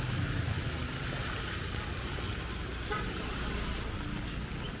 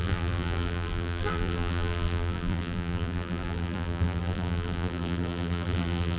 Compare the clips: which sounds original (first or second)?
first